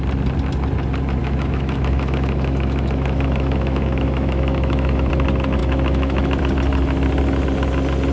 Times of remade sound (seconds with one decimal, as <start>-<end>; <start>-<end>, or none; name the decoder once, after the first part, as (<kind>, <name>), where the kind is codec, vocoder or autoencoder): 1.2-5.1 (autoencoder, DAC-VAE); 5.6-6.4